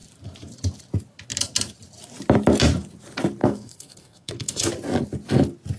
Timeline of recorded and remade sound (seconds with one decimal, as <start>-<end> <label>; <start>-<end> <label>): 0.0-3.4 recorded; 3.4-4.7 remade; 4.7-5.8 recorded

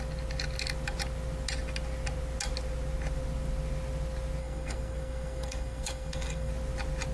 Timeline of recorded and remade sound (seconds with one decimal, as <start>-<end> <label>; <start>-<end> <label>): 0.0-4.4 recorded; 4.4-6.5 remade; 6.5-7.1 recorded

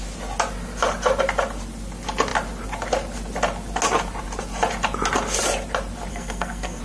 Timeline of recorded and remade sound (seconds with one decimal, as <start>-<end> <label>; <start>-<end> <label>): 0.0-6.1 recorded; 6.1-6.8 remade

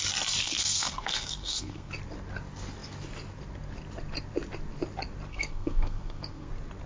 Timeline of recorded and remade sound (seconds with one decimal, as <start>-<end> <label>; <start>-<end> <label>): 0.0-0.4 recorded; 0.4-1.9 remade; 1.9-5.3 recorded; 5.3-6.5 remade; 6.5-6.9 recorded

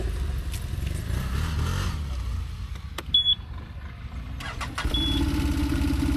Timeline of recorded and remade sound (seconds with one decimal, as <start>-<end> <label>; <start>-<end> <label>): 0.0-6.2 recorded

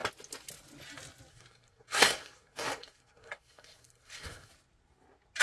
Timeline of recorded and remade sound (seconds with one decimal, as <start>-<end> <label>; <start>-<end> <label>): 0.0-1.3 recorded; 1.3-4.5 remade; 4.5-5.4 recorded

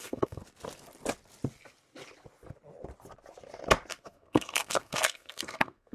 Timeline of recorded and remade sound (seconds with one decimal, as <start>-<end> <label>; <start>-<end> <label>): 0.0-0.4 remade; 0.4-3.9 recorded; 3.9-5.9 remade